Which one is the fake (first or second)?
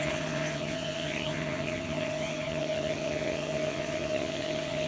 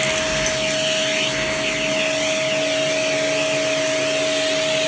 first